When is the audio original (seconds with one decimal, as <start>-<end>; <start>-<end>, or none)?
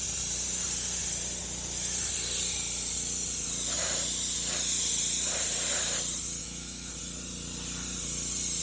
0.0-6.4; 6.9-8.6